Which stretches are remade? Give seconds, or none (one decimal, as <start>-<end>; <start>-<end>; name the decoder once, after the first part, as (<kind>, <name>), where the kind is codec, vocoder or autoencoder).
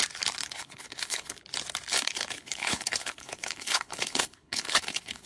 0.4-1.4 (codec, HILCodec); 1.9-5.3